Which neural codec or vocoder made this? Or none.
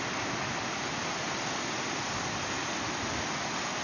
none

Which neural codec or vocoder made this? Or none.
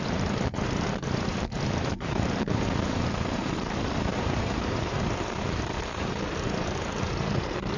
vocoder, BigVGAN v2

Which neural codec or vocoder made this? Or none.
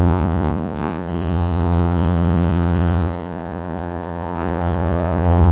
vocoder, Vocos